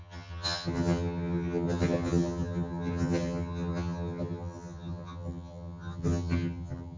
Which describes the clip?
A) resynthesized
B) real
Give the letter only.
A